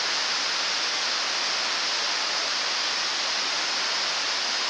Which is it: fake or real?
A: real